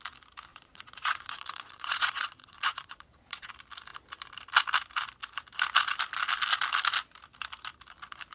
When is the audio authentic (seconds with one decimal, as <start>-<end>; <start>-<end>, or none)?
0.0-0.5; 3.5-8.3

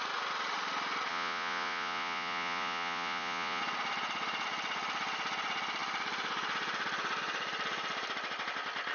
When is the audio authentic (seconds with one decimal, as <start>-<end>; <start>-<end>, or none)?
0.0-1.1; 3.6-8.9

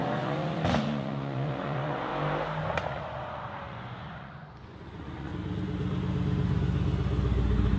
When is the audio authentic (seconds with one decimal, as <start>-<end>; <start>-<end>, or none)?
2.1-2.7; 5.3-7.8